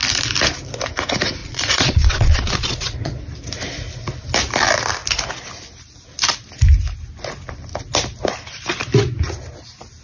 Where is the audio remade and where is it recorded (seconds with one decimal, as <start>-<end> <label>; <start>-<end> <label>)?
0.0-1.4 recorded; 1.4-3.2 remade; 3.2-10.0 recorded